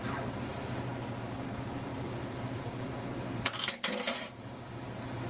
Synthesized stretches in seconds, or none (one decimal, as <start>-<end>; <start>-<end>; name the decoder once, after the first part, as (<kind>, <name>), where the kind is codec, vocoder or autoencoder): 0.0-0.9 (vocoder, BigVGAN v2); 1.4-5.3